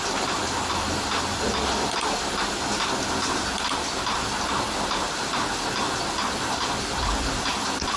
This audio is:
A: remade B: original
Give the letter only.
B